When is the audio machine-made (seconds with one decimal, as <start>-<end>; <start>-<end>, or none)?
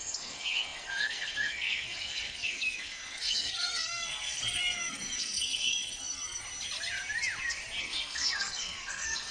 0.0-6.4; 7.8-9.3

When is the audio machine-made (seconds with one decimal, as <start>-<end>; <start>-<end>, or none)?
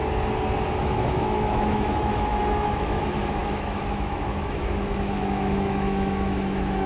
0.8-6.9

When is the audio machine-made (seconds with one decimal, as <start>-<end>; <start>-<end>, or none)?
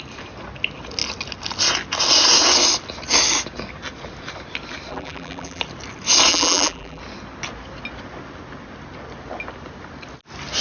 4.9-5.6; 6.3-7.0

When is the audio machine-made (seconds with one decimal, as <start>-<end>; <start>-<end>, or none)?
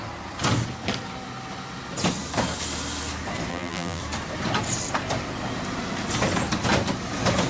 3.5-4.0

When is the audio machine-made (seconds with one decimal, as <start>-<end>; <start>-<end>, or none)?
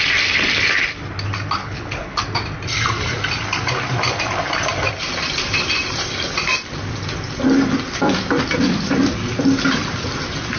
1.6-2.2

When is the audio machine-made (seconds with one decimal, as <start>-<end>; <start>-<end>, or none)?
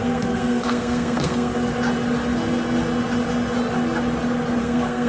0.0-1.5; 4.6-5.1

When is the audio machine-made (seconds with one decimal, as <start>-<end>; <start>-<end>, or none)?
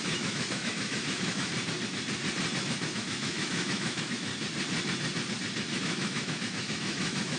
0.0-1.5; 2.6-4.3; 5.8-7.4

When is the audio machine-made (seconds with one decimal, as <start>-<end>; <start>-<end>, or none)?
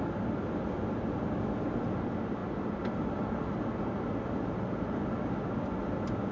none